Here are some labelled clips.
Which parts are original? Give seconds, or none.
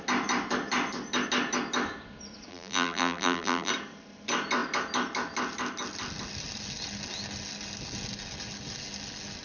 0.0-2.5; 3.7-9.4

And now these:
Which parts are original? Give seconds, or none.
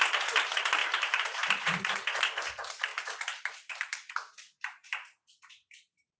0.0-0.8; 1.8-2.9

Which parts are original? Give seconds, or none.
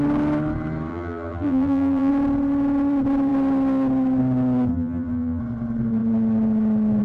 0.0-0.9; 2.1-4.7; 5.4-7.0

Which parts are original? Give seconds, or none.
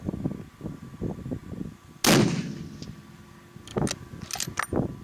0.0-5.0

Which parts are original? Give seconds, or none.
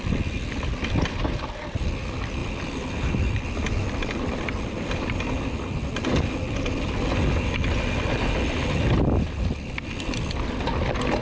0.0-2.4; 5.2-11.2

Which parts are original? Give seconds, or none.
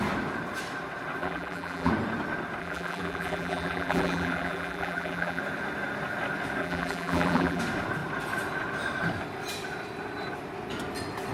0.0-1.2; 1.9-2.6; 5.4-6.6; 7.6-11.3